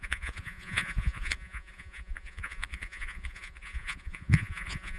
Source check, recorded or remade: remade